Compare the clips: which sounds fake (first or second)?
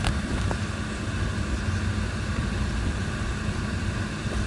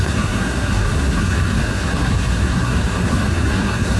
second